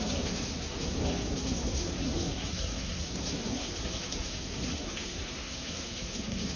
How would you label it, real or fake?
fake